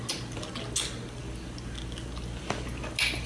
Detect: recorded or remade recorded